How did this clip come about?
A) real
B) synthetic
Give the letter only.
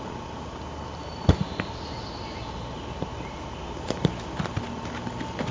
A